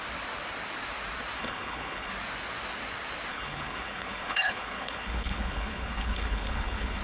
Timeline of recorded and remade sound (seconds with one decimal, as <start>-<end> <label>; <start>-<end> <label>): 0.0-1.4 recorded; 1.4-2.1 remade; 2.1-3.3 recorded; 3.3-7.0 remade